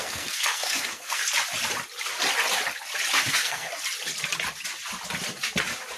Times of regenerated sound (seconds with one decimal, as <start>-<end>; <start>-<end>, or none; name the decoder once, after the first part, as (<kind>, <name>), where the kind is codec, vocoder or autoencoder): 0.0-1.2 (codec, SNAC); 3.3-3.7